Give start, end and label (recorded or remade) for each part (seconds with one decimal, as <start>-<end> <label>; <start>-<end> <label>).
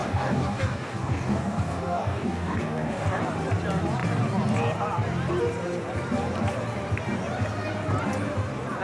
0.0-3.2 remade; 3.2-8.8 recorded